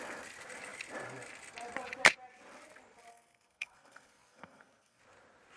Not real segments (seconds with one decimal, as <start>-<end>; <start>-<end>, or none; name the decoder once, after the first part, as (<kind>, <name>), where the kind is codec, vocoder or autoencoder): 3.1-5.0 (codec, SNAC)